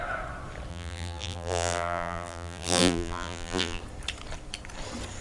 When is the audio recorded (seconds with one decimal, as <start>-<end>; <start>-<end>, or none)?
0.0-0.7; 3.8-5.2